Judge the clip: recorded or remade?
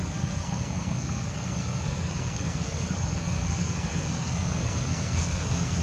remade